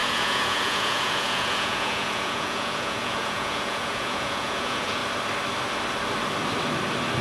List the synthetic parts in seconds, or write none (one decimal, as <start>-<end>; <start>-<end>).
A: 0.0-5.0